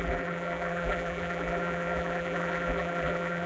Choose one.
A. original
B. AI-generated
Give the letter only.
B